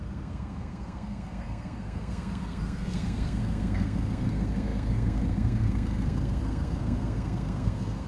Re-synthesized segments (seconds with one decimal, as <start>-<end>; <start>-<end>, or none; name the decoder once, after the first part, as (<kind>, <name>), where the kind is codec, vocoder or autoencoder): 0.0-8.1 (codec, SNAC)